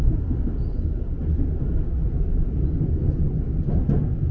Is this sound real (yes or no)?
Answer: yes